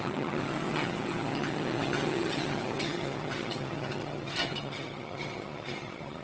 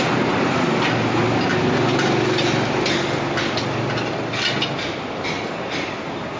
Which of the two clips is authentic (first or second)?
second